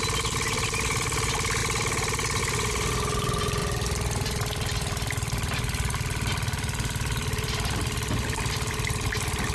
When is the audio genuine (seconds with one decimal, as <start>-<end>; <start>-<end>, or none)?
0.0-3.6; 8.7-9.5